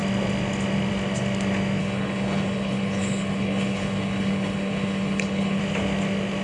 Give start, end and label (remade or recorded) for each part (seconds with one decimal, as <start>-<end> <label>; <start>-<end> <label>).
0.0-1.8 recorded; 1.8-5.6 remade; 5.6-6.4 recorded